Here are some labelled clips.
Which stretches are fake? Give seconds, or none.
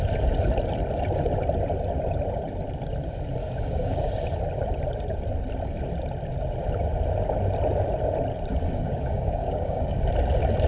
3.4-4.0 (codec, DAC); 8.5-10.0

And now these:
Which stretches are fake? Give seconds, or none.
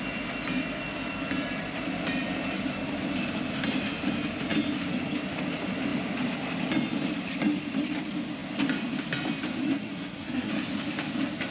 9.6-10.5 (codec, SNAC)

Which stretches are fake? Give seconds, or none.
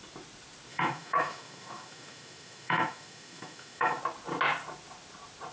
0.7-4.0 (autoencoder, DAC-VAE)